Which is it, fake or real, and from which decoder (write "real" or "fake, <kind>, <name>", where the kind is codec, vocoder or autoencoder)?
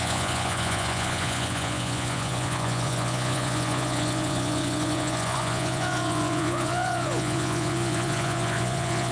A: fake, vocoder, Vocos